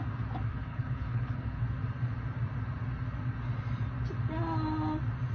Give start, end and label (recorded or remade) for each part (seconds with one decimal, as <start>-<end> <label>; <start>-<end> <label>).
0.0-0.5 recorded; 0.5-1.6 remade; 1.6-5.3 recorded